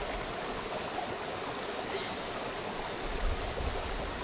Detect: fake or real real